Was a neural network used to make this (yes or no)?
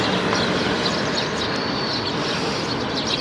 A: yes